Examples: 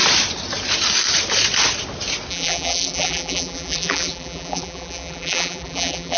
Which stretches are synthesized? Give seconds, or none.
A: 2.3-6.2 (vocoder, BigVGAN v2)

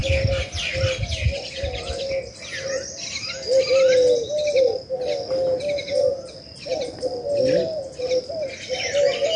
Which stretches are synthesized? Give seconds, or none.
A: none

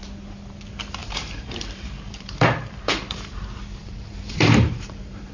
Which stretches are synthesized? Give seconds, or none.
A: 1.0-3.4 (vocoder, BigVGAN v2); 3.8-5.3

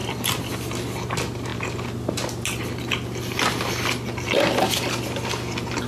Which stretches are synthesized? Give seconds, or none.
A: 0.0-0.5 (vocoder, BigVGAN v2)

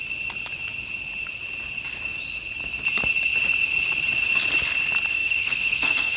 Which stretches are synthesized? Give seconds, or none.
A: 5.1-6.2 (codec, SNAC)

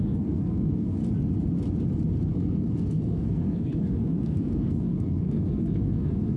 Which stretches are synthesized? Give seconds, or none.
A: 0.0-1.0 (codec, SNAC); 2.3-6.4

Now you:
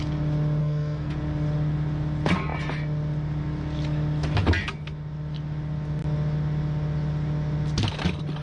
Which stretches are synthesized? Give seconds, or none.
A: 0.6-1.1 (codec, SNAC)

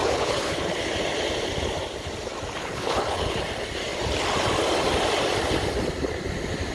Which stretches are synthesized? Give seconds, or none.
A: 0.0-0.7 (codec, HILCodec); 2.6-3.4